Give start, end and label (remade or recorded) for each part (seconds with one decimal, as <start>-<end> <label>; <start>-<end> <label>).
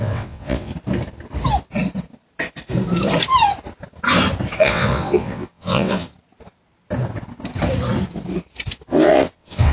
0.0-0.7 remade; 0.7-4.6 recorded; 4.6-6.1 remade; 6.1-8.9 recorded; 8.9-9.7 remade